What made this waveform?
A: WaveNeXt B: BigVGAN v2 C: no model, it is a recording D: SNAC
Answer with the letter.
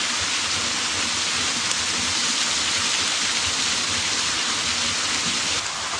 C